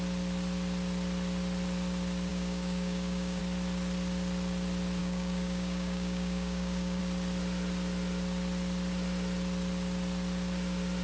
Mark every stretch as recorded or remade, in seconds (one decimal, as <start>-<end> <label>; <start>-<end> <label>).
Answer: 0.0-2.3 recorded; 2.3-3.4 remade; 3.4-5.0 recorded; 5.0-7.0 remade; 7.0-11.0 recorded